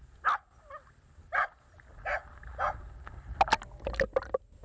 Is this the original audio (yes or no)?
yes